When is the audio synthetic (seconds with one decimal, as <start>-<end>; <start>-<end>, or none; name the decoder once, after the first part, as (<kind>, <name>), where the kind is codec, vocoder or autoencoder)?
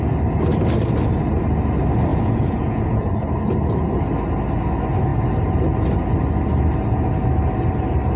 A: 2.1-3.2 (vocoder, Vocos)